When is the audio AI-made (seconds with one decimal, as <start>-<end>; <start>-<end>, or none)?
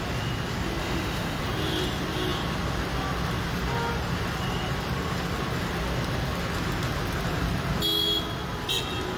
0.8-1.4